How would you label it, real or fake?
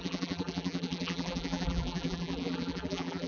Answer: fake